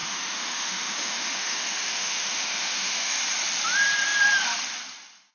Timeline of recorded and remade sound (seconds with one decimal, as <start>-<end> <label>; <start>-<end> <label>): 0.0-3.2 remade; 3.2-5.3 recorded